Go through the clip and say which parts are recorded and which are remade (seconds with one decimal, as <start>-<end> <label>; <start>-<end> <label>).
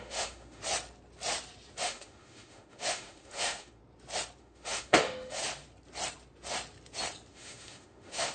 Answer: 0.0-0.6 remade; 0.6-1.8 recorded; 1.8-3.8 remade; 3.8-4.4 recorded; 4.4-5.4 remade; 5.4-7.3 recorded; 7.3-8.3 remade